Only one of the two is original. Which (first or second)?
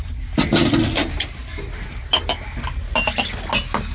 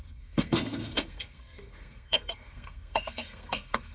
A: first